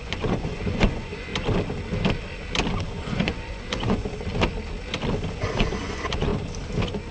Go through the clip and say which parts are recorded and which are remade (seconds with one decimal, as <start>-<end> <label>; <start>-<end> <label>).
0.0-1.3 remade; 1.3-2.8 recorded; 2.8-4.0 remade; 4.0-5.3 recorded; 5.3-6.3 remade; 6.3-7.1 recorded